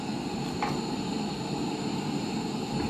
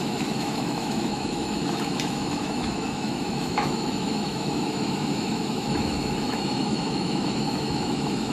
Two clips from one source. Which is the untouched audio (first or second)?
first